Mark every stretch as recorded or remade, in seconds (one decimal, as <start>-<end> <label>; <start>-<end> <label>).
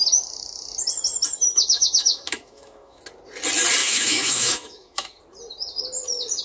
0.0-1.5 recorded; 1.5-3.0 remade; 3.0-3.8 recorded; 3.8-5.2 remade; 5.2-6.4 recorded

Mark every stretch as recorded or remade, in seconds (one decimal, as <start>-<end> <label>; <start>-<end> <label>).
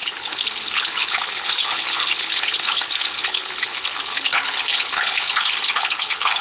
0.0-6.4 remade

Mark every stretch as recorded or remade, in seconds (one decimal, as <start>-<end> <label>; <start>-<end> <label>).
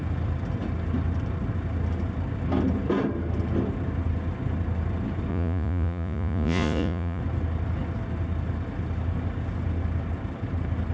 0.0-5.3 recorded; 5.3-7.2 remade; 7.2-10.9 recorded